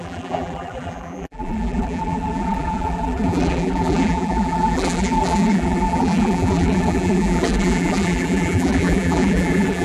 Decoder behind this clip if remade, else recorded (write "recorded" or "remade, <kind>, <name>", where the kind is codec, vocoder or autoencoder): remade, vocoder, BigVGAN v2